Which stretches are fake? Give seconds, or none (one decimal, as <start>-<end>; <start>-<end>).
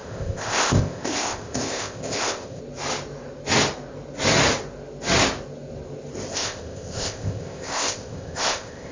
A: 0.0-2.6; 6.3-8.9